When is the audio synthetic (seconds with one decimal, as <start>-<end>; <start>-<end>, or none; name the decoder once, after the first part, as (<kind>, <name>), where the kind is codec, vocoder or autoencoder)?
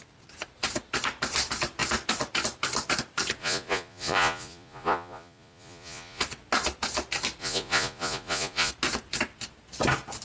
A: 3.4-6.2 (vocoder, Vocos); 7.4-8.7